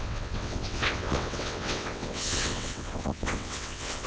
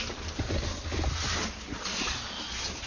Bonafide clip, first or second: second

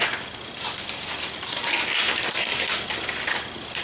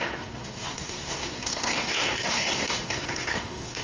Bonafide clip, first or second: first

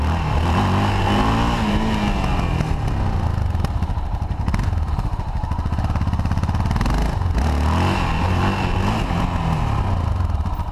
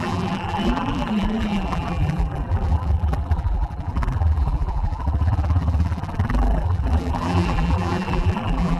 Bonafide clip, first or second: first